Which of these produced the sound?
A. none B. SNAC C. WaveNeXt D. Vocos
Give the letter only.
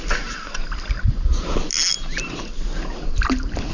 A